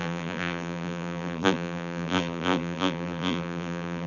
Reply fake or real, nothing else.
fake